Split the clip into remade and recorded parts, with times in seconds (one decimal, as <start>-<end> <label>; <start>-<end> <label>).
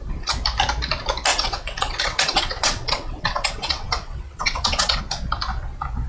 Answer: 0.0-1.3 recorded; 1.3-5.0 remade; 5.0-6.1 recorded